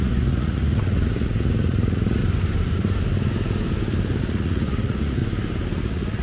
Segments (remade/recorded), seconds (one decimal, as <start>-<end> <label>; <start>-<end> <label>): 0.0-2.2 remade; 2.2-4.2 recorded; 4.2-5.2 remade; 5.2-5.8 recorded; 5.8-6.2 remade